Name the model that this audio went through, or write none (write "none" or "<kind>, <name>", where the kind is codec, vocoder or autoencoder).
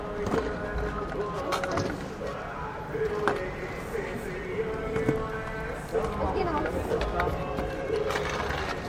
none